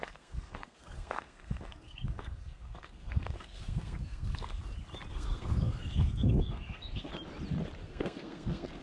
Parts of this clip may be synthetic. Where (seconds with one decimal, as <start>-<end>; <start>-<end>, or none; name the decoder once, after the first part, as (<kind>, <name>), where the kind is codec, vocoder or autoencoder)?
0.0-4.6 (codec, SNAC); 5.1-7.1; 7.8-8.8